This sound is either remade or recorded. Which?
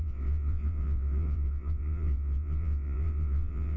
remade